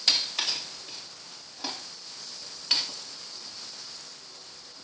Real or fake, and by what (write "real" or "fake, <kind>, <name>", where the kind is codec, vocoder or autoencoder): real